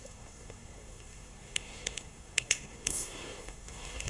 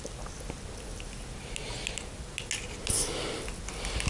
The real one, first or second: second